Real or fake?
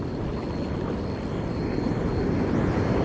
real